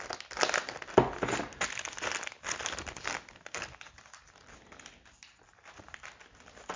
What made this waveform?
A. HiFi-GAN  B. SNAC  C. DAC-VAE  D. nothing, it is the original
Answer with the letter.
D